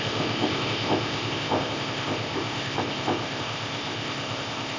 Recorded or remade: remade